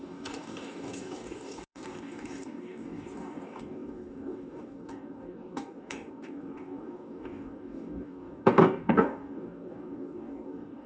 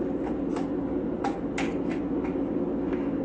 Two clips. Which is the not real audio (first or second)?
first